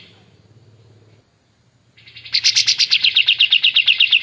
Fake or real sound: real